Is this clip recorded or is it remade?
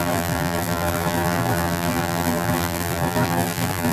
remade